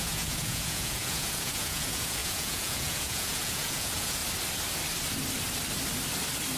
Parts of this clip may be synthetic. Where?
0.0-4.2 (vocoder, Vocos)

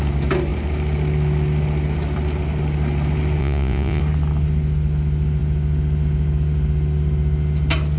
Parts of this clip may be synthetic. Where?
3.4-4.0 (vocoder, Vocos)

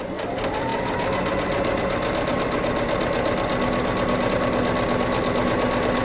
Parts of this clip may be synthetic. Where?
none

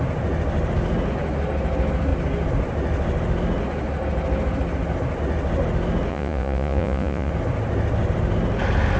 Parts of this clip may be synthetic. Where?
6.1-7.3 (vocoder, Vocos)

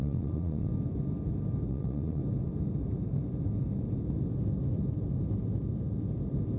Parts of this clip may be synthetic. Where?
0.0-0.7 (vocoder, Vocos); 1.7-2.2

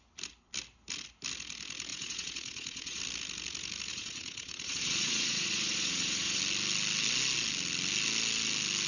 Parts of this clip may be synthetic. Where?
1.9-3.0 (vocoder, Vocos); 3.9-6.4